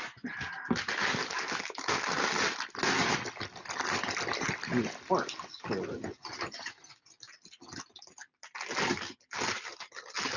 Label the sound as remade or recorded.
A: recorded